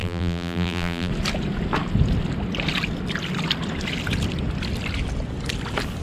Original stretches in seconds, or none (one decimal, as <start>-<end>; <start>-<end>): 1.1-6.0

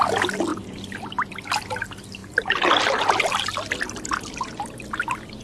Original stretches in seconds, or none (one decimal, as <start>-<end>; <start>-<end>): 0.0-0.5; 1.8-2.2; 4.5-5.4

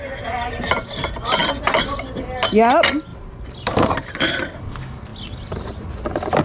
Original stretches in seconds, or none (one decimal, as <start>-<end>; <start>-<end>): 0.0-3.1; 3.7-6.4

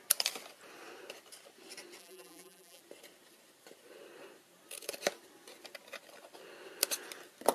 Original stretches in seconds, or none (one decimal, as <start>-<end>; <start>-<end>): 0.0-2.0; 2.8-7.5

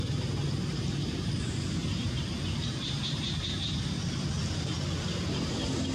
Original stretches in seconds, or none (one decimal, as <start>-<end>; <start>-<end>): 0.0-1.8; 4.3-5.9

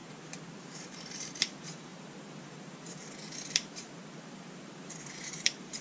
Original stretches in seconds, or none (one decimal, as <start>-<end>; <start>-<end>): 0.0-0.6